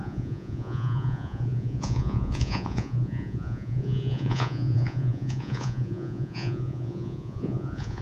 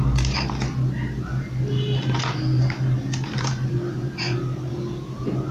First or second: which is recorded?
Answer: second